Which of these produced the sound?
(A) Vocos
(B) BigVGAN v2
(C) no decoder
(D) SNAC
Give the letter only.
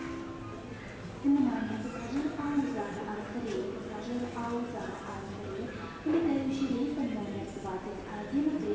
C